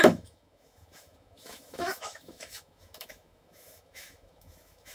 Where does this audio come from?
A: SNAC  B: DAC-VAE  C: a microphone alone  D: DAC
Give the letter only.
B